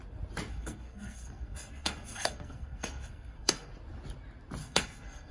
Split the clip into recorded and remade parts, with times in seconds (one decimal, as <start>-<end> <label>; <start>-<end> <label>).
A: 0.0-0.5 recorded; 0.5-3.7 remade; 3.7-4.6 recorded; 4.6-5.3 remade